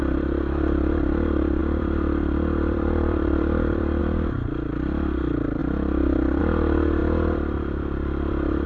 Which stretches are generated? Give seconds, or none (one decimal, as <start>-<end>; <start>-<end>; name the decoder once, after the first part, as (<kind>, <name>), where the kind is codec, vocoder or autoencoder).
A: 1.6-4.0 (vocoder, BigVGAN v2); 5.6-6.4; 7.0-8.7